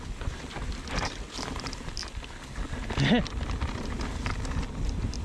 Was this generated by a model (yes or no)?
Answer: no